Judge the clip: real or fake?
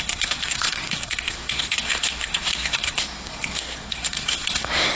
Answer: fake